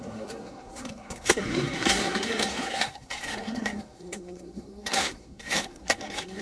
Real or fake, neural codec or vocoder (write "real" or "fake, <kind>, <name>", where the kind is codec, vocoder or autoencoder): fake, codec, SNAC